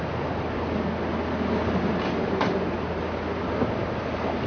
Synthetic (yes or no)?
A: no